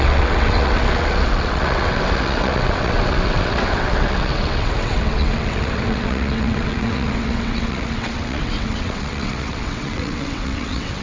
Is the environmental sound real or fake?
fake